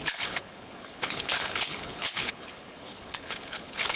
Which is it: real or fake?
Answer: fake